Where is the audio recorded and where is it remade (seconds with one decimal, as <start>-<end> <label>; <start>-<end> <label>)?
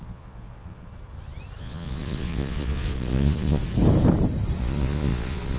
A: 0.0-0.9 remade; 0.9-1.6 recorded; 1.6-3.6 remade; 3.6-4.6 recorded; 4.6-5.6 remade